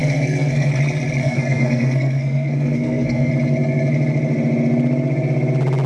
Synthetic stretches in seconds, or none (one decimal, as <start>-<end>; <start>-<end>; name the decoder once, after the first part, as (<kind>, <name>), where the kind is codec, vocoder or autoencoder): 0.0-0.7 (codec, SNAC); 1.2-3.3